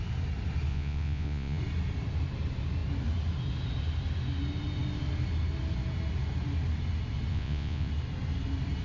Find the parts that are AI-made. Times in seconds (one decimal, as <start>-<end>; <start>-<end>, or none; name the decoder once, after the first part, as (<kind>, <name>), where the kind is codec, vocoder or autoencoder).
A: 0.7-1.6 (vocoder, Vocos); 7.3-7.9